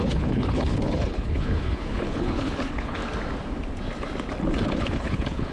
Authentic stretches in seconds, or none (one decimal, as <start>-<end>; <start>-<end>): 3.0-4.8